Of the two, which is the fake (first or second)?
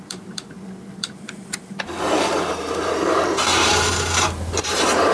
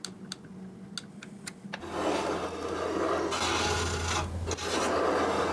first